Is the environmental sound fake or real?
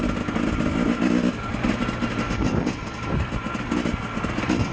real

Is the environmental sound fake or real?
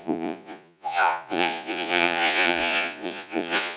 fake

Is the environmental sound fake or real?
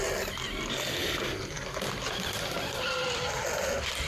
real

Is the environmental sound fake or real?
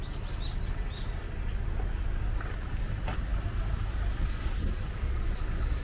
real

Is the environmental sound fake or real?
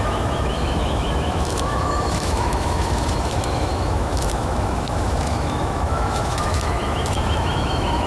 fake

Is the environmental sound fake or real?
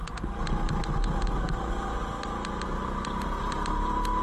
real